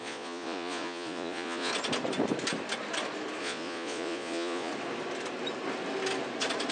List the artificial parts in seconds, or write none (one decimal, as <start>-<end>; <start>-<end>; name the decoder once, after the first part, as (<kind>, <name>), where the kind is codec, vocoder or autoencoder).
0.0-1.7 (vocoder, Vocos); 3.4-4.7